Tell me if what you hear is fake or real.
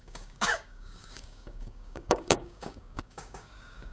fake